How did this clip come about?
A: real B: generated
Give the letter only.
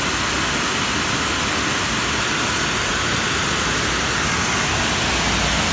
A